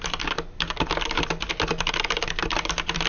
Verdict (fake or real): real